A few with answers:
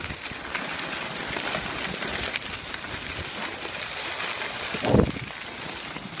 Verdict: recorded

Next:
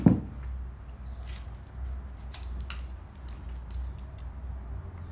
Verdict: recorded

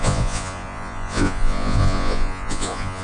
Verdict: remade